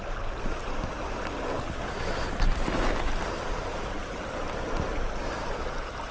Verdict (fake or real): real